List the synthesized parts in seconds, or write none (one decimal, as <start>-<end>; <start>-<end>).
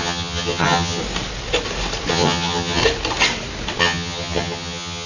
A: 0.0-1.0; 2.1-2.8; 3.8-5.1